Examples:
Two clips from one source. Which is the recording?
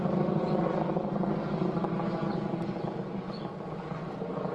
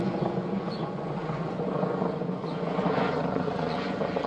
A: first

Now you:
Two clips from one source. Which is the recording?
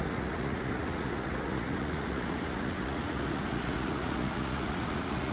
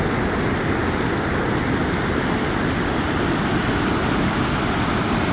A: second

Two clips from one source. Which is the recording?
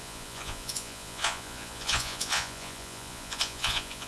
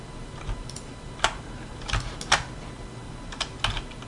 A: second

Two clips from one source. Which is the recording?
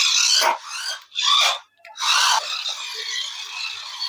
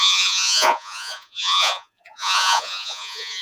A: first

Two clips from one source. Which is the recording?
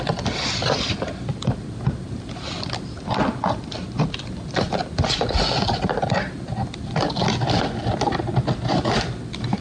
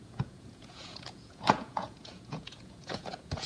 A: first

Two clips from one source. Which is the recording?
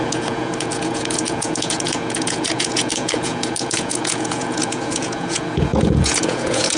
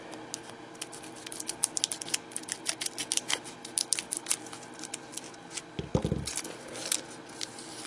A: second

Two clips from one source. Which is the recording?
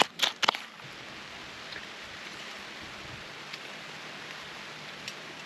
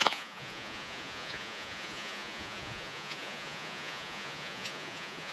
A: first